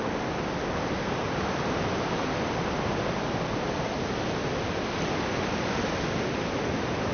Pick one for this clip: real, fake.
real